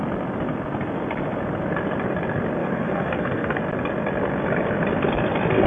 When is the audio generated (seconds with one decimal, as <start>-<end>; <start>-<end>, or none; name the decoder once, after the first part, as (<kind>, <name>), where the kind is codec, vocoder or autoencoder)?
2.6-3.6 (codec, SNAC)